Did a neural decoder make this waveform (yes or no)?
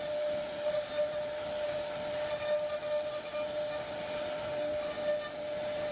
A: no